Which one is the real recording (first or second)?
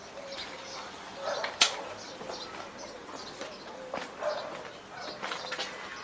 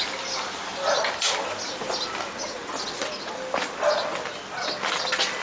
second